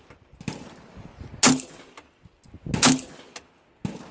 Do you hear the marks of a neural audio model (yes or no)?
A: no